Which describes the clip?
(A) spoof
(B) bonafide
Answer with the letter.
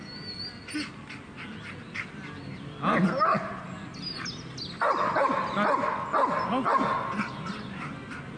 B